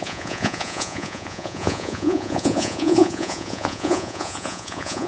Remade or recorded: remade